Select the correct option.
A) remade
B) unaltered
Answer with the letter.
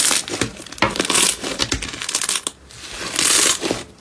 B